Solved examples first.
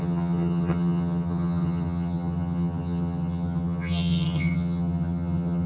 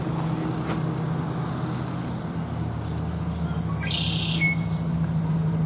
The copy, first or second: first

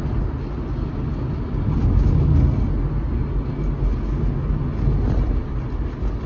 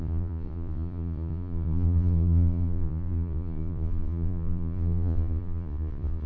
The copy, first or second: second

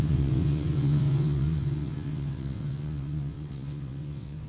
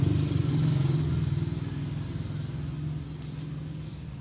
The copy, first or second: first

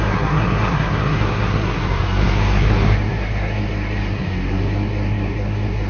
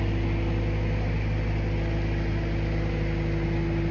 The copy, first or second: first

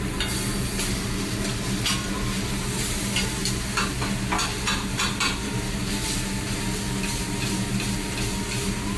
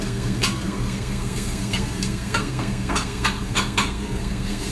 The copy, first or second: second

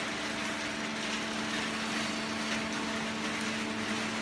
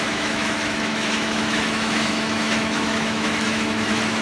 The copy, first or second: second